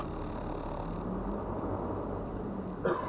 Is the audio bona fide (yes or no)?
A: yes